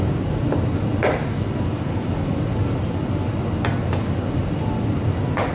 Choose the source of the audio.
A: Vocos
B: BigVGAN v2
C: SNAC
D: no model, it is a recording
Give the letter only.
D